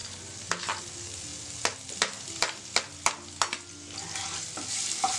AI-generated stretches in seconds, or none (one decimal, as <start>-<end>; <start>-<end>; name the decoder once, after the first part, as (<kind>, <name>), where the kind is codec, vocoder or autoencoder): none